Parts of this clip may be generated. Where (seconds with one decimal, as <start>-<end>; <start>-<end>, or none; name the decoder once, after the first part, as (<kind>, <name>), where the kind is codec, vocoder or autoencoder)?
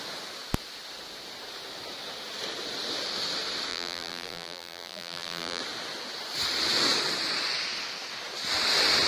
3.7-5.6 (vocoder, BigVGAN v2)